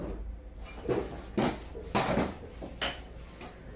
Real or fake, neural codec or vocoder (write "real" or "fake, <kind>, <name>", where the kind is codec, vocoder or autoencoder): real